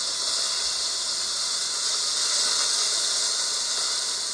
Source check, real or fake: real